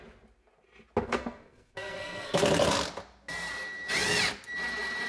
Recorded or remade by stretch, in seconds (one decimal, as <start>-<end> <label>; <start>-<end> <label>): 0.0-1.0 recorded; 1.0-2.4 remade; 2.4-5.1 recorded